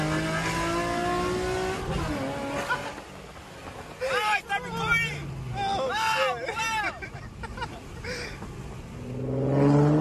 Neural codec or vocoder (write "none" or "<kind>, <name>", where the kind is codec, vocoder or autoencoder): none